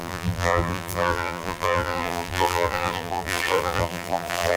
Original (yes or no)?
no